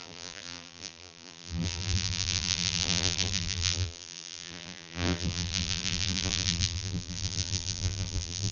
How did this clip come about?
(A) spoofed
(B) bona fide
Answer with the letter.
A